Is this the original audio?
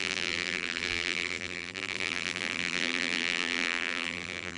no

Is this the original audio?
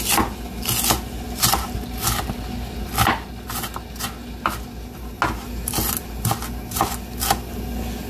yes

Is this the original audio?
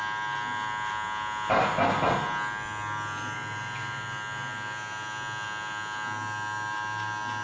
yes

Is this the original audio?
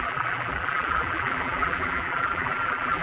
no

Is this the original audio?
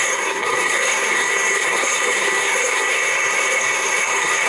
no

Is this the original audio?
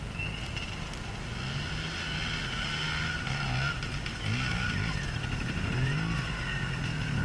yes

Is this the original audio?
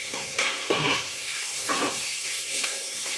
no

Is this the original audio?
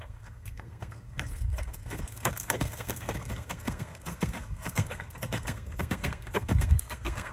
no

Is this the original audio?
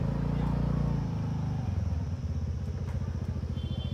yes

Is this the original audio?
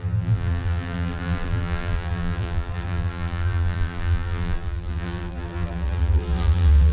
no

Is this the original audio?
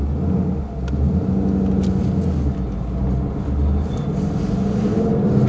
yes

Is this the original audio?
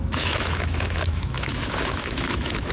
no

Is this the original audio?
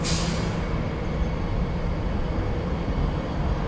yes